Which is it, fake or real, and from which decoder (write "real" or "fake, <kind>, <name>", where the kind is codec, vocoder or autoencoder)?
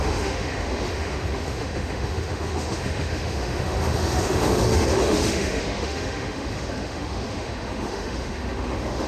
fake, autoencoder, DAC-VAE